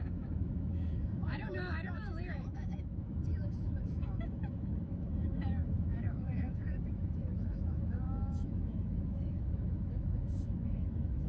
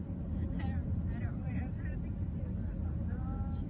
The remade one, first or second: first